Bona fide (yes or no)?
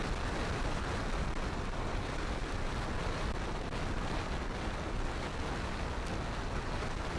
yes